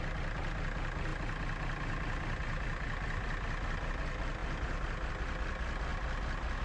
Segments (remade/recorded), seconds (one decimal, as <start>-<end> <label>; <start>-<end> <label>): 0.0-6.6 recorded

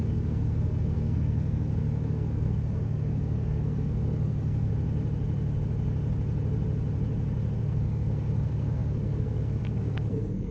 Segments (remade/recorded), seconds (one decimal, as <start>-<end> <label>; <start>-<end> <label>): 0.0-4.7 remade; 4.7-7.6 recorded; 7.6-10.5 remade

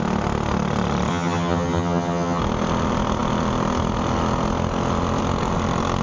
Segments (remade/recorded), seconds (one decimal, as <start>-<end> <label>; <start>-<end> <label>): 0.0-1.1 recorded; 1.1-2.4 remade; 2.4-6.0 recorded